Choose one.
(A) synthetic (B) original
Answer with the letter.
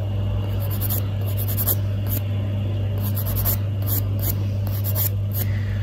B